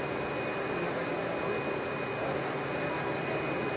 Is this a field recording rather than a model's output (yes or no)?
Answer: yes